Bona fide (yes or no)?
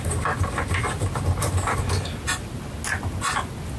yes